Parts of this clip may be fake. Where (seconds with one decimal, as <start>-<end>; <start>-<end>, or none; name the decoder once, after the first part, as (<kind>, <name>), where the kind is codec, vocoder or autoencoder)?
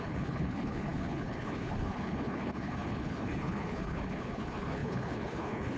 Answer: 0.0-5.8 (codec, HILCodec)